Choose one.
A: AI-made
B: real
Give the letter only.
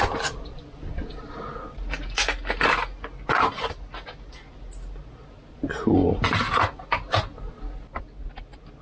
B